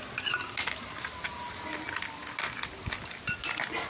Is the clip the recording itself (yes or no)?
yes